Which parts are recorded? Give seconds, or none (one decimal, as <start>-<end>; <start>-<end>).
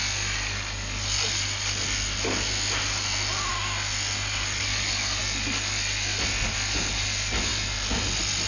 0.0-8.5